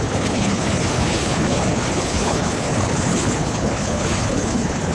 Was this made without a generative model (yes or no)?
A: no